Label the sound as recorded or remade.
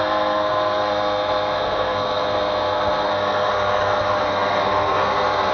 remade